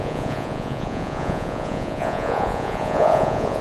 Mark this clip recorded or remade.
remade